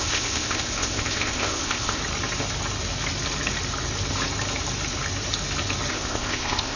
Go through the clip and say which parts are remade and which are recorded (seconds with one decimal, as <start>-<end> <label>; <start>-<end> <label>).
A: 0.0-2.0 remade; 2.0-5.9 recorded; 5.9-6.8 remade